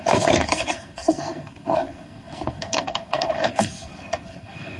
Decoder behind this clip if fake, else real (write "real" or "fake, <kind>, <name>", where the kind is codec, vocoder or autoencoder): fake, codec, SNAC